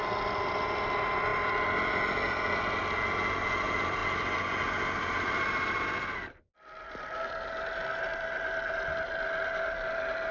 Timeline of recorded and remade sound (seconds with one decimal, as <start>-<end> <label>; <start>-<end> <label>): 0.0-10.3 recorded